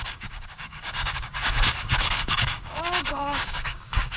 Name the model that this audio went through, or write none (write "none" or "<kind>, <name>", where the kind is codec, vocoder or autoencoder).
codec, DAC